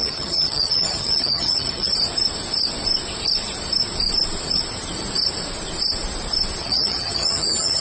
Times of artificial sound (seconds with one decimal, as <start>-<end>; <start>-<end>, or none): 0.0-1.9; 6.6-7.8